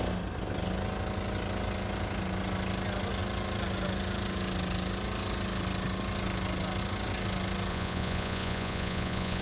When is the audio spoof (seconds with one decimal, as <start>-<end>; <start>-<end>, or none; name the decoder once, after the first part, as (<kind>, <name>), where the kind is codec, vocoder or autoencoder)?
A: 7.7-9.4 (vocoder, Vocos)